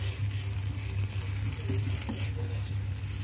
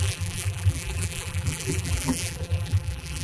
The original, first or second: first